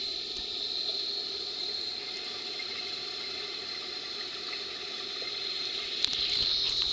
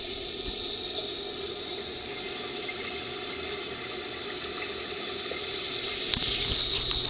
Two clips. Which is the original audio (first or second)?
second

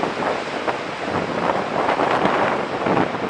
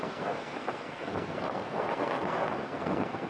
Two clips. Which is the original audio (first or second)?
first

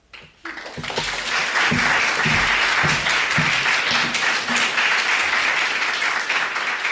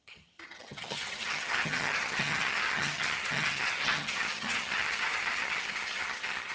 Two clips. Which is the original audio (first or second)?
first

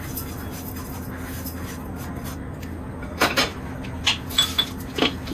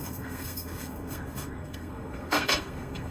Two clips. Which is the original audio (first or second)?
first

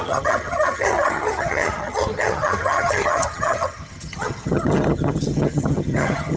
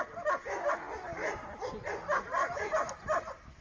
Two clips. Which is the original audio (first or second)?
second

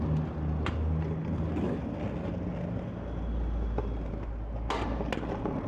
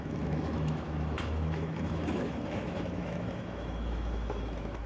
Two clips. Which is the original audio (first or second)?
first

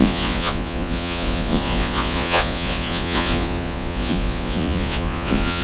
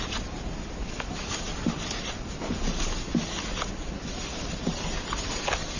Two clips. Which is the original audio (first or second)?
second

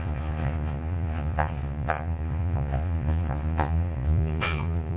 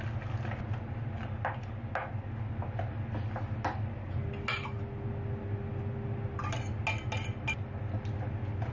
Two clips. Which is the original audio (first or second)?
second